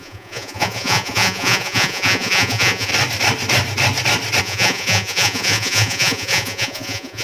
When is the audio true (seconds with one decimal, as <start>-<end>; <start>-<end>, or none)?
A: 2.9-4.4